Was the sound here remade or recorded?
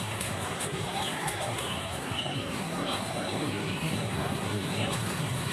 remade